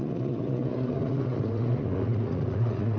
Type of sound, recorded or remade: remade